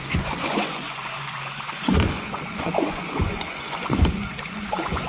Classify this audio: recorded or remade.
remade